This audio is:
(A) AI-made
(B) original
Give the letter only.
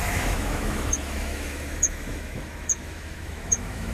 A